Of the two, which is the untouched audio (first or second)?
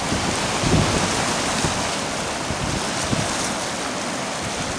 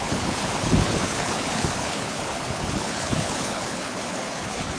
first